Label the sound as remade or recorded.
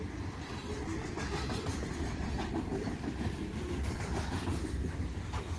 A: remade